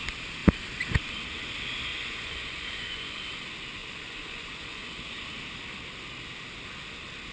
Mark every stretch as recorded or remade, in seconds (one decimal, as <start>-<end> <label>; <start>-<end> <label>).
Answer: 0.0-1.9 recorded; 1.9-3.2 remade; 3.2-3.8 recorded; 3.8-4.9 remade; 4.9-7.3 recorded